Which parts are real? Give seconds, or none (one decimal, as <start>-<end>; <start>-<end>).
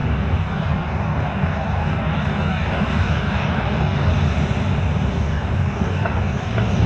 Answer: 4.1-5.1